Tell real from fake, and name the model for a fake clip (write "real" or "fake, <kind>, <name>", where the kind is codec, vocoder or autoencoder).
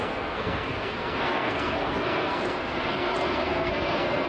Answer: fake, codec, SNAC